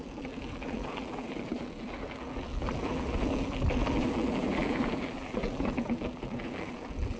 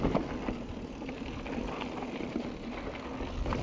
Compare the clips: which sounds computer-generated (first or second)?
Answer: first